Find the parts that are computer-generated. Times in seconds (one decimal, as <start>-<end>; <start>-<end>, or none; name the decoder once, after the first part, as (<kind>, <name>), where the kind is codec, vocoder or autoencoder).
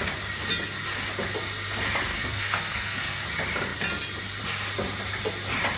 2.1-3.2 (codec, SNAC)